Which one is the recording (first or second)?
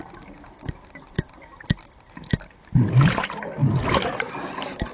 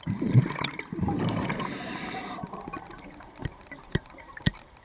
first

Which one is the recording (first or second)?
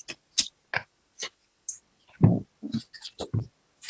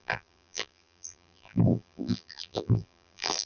first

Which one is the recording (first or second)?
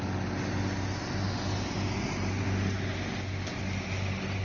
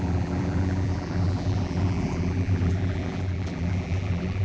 first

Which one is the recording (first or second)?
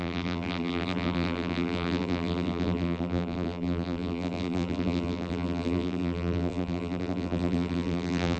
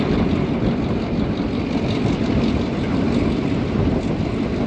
second